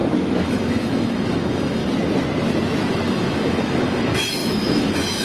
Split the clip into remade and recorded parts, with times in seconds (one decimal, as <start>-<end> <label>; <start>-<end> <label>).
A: 0.0-1.8 remade; 1.8-2.9 recorded; 2.9-5.2 remade